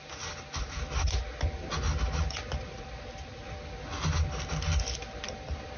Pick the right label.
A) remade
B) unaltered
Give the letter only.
B